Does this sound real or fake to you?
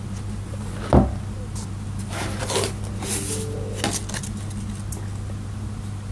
real